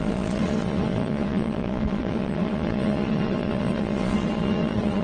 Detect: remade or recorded remade